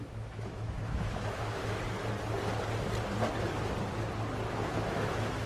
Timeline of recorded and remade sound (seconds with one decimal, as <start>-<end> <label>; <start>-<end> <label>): 0.0-1.6 remade; 1.6-4.5 recorded; 4.5-5.5 remade